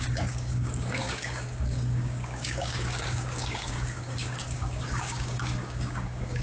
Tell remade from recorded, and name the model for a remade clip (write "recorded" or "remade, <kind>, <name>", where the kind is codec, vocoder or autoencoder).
remade, codec, DAC